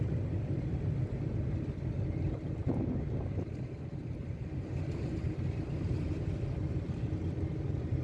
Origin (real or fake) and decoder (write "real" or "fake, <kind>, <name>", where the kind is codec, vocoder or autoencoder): real